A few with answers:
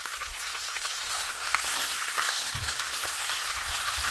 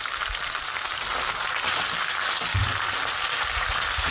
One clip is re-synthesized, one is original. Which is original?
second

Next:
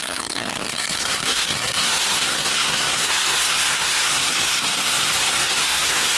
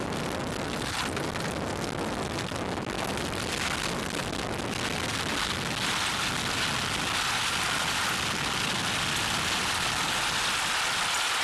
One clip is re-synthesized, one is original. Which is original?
second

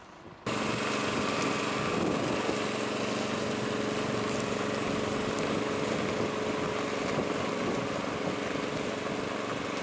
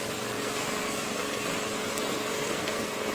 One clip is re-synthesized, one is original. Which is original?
first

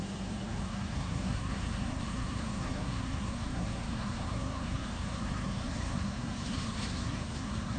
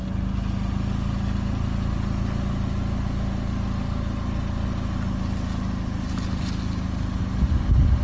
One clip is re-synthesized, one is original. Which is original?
second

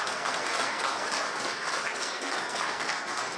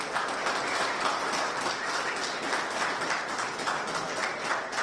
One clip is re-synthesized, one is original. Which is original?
second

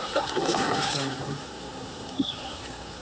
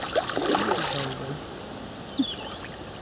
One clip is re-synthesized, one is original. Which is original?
second